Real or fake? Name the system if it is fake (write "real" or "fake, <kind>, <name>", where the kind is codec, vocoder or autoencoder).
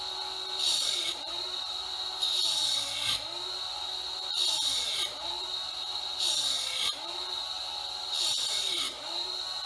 real